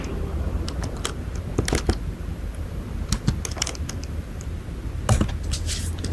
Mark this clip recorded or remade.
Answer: recorded